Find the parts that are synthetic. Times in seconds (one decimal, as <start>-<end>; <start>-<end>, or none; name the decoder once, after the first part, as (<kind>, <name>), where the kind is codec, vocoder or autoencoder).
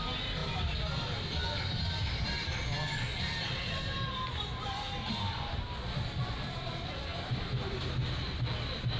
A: none